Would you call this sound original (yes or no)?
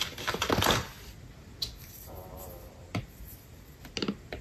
yes